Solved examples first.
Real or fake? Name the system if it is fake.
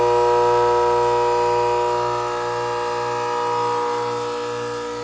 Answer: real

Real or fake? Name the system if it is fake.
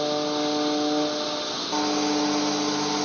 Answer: real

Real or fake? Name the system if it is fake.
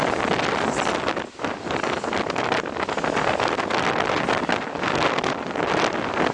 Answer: real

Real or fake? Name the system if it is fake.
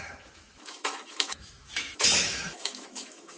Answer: fake, autoencoder, DAC-VAE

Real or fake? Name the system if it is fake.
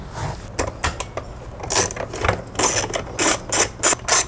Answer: real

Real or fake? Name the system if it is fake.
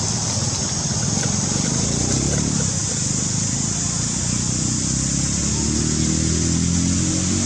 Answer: real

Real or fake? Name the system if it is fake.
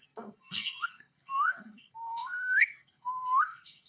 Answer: fake, codec, SNAC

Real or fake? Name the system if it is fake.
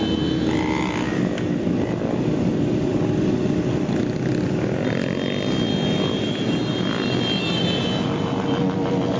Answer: real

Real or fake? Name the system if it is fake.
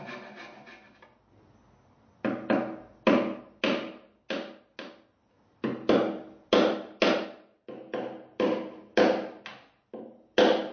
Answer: real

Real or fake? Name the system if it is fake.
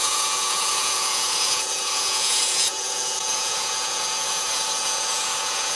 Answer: fake, vocoder, Vocos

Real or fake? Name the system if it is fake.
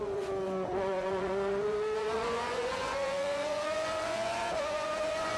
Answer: fake, vocoder, Vocos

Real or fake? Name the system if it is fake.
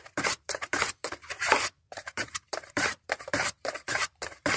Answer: fake, vocoder, BigVGAN v2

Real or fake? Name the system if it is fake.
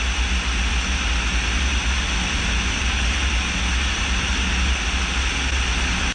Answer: real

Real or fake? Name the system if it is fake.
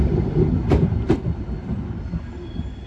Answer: real